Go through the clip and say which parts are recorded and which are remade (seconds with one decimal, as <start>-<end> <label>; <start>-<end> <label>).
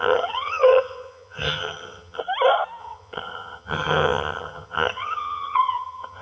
0.0-2.2 remade; 2.2-2.8 recorded; 2.8-6.2 remade